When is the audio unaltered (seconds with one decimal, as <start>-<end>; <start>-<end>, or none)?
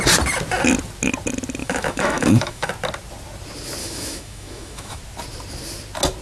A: 0.0-1.6; 2.7-3.8; 5.0-6.2